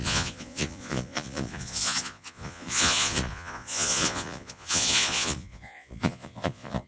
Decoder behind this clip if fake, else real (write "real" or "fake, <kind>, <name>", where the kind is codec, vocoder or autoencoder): fake, vocoder, Vocos